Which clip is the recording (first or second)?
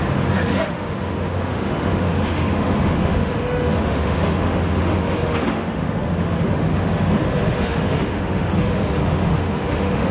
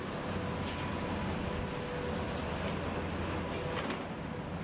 second